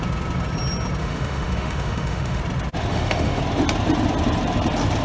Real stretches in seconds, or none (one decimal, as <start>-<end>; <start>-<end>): 0.0-1.0; 2.4-2.9; 3.4-5.0